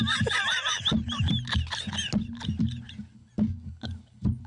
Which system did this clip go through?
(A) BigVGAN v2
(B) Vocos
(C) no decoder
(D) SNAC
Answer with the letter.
C